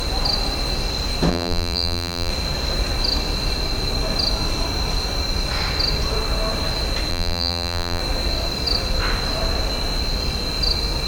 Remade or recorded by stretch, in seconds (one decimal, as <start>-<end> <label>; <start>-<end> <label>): 0.0-1.3 recorded; 1.3-2.3 remade; 2.3-7.1 recorded; 7.1-8.0 remade; 8.0-11.1 recorded